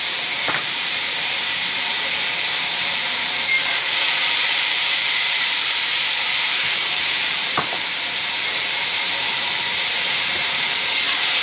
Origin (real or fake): fake